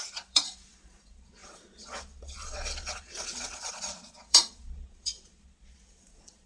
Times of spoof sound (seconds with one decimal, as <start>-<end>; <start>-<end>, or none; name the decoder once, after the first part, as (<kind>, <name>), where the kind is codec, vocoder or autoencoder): 0.0-6.5 (vocoder, Vocos)